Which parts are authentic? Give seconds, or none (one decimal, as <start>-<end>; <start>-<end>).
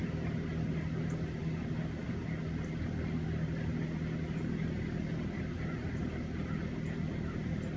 0.0-7.8